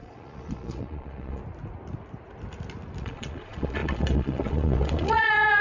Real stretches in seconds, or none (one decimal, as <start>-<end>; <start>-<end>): 1.4-3.0